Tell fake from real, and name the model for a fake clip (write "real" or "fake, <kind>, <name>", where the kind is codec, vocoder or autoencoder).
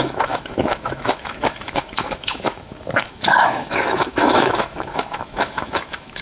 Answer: fake, autoencoder, DAC-VAE